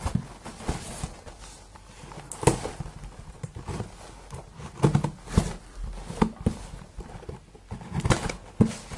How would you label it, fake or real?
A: real